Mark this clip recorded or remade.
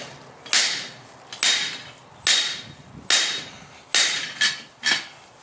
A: recorded